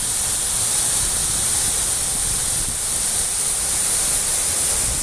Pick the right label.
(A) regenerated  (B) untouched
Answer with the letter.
B